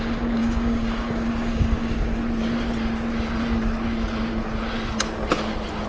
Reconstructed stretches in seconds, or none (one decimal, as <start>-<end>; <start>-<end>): 0.0-2.2

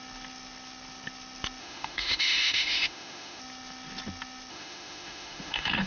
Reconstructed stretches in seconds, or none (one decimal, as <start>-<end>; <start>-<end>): 1.6-3.4; 4.5-5.9

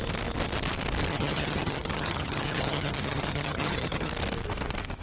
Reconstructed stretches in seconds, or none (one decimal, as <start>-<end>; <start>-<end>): 1.1-4.1

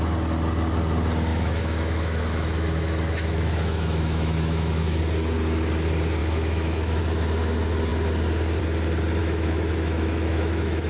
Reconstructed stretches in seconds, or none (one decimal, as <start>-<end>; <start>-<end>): 1.3-5.0; 6.2-7.0; 9.2-10.9

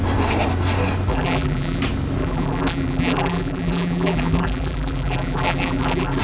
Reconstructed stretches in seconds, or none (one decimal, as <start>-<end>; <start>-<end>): 1.1-1.8; 2.2-6.2